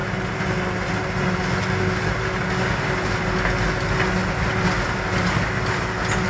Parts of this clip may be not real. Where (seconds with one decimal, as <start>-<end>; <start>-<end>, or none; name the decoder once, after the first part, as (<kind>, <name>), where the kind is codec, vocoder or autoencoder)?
none